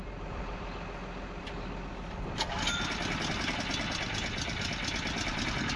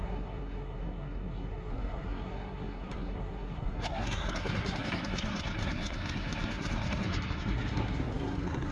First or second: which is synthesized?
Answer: second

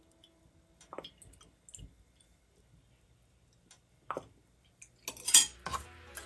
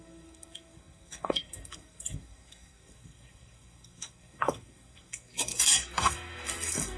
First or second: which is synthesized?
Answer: second